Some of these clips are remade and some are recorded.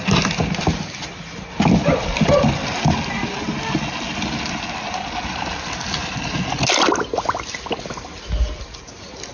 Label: recorded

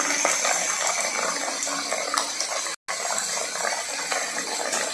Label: recorded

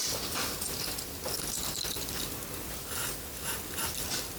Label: recorded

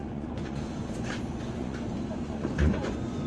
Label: remade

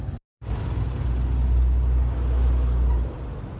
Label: recorded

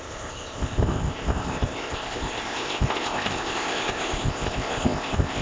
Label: remade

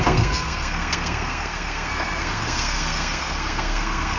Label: remade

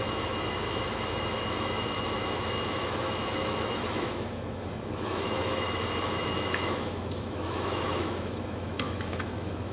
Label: remade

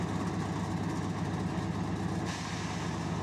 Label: recorded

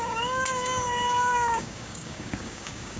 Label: remade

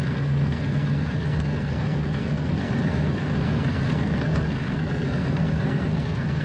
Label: remade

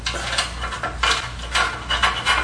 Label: recorded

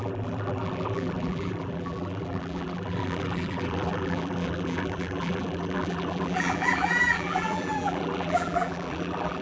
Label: remade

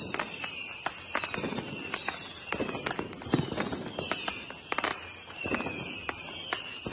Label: recorded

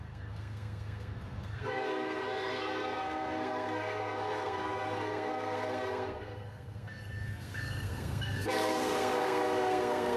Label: remade